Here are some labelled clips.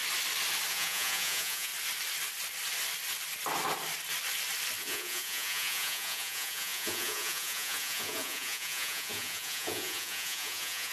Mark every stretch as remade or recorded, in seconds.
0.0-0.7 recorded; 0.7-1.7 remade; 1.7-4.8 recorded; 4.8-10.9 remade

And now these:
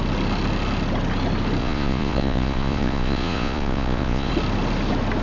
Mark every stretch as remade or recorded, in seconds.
0.0-1.6 recorded; 1.6-4.3 remade; 4.3-5.2 recorded

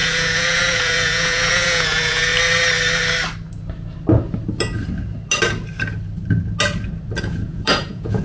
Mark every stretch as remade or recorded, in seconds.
0.0-2.3 remade; 2.3-7.2 recorded; 7.2-8.2 remade

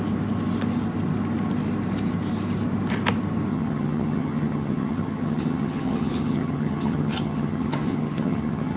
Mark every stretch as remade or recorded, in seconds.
0.0-3.5 recorded; 3.5-8.8 remade

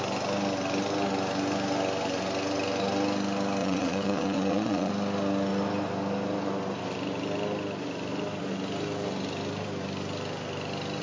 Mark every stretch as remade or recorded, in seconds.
0.0-3.6 recorded; 3.6-4.9 remade; 4.9-11.0 recorded